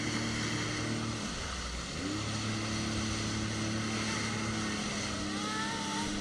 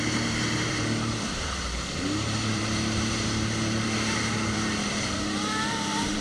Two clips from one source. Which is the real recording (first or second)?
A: first